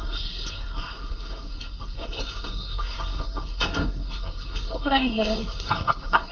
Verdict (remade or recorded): remade